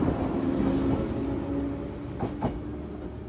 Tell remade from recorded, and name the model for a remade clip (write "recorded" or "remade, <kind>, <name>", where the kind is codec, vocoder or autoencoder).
recorded